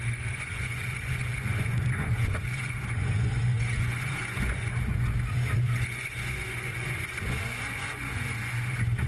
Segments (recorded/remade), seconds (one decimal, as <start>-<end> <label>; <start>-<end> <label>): 0.0-9.1 remade